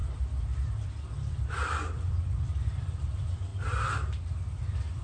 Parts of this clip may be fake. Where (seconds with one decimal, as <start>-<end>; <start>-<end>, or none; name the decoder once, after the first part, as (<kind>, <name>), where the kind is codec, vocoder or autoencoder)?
0.0-3.5 (vocoder, BigVGAN v2); 4.6-5.0